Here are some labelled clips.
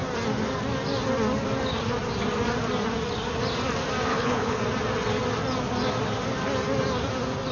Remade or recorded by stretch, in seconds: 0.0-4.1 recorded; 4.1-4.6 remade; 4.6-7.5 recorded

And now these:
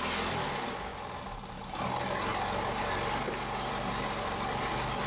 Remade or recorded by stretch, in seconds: 0.0-0.9 remade; 0.9-3.6 recorded; 3.6-5.1 remade

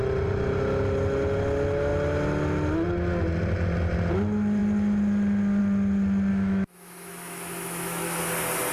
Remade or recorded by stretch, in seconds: 0.0-6.3 recorded; 6.3-8.2 remade; 8.2-8.7 recorded

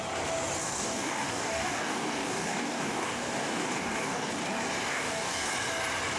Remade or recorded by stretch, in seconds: 0.0-0.6 recorded; 0.6-4.3 remade; 4.3-4.9 recorded; 4.9-5.5 remade; 5.5-6.2 recorded

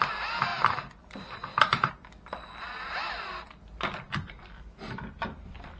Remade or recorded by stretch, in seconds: 0.0-0.5 recorded; 0.5-1.9 remade; 1.9-5.8 recorded